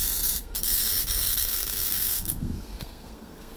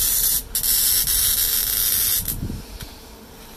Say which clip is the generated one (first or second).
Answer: first